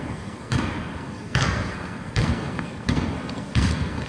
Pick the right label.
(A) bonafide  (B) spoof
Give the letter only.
B